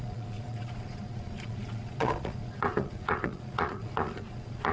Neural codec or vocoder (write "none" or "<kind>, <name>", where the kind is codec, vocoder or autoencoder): vocoder, Vocos